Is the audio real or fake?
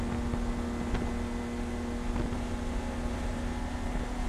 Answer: real